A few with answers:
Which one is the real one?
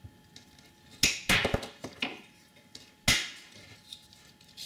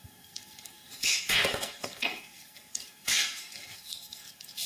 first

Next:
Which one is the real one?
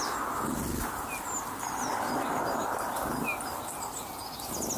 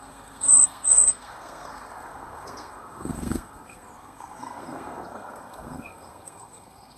first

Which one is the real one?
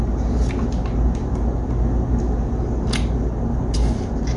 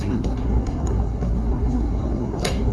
first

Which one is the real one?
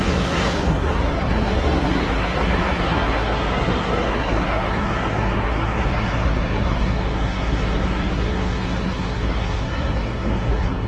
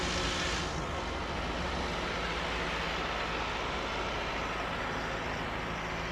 second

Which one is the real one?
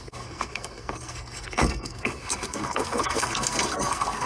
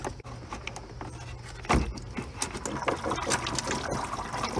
second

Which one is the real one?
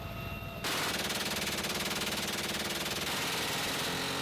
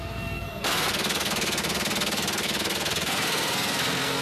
first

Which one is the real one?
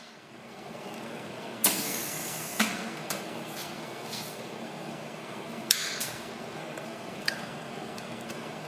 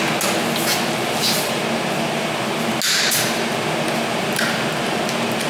second